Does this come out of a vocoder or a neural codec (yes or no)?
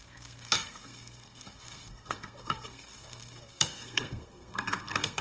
yes